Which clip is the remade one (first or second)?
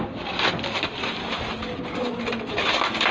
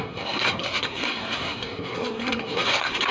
second